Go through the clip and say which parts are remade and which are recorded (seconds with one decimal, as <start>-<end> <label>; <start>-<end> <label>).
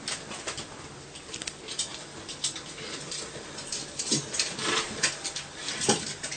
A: 0.0-6.4 recorded